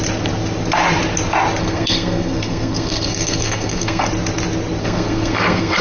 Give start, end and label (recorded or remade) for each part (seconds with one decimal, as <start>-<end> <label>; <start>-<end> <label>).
0.0-1.6 recorded; 1.6-4.1 remade; 4.1-4.8 recorded; 4.8-5.8 remade

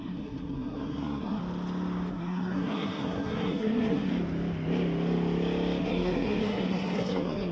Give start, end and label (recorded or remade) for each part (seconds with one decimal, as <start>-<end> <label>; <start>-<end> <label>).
0.0-1.4 remade; 1.4-2.1 recorded; 2.1-4.1 remade; 4.1-5.8 recorded; 5.8-7.5 remade

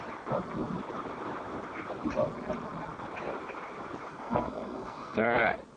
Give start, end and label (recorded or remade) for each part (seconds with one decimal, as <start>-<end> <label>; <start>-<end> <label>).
0.0-4.1 recorded; 4.1-5.2 remade; 5.2-5.8 recorded

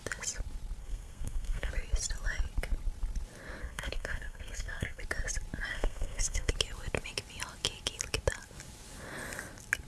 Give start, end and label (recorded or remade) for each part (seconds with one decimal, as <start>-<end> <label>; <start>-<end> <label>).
0.0-0.8 recorded; 0.8-1.7 remade; 1.7-3.6 recorded; 3.6-5.0 remade; 5.0-5.7 recorded; 5.7-6.5 remade; 6.5-9.9 recorded

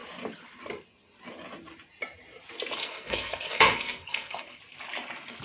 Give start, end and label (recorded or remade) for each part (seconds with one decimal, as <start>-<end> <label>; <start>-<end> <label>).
0.0-2.8 recorded; 2.8-4.6 remade; 4.6-5.4 recorded